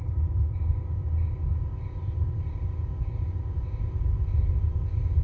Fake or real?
fake